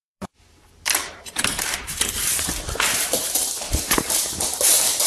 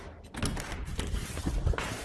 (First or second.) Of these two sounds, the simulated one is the first